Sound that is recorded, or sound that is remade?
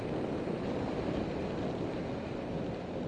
recorded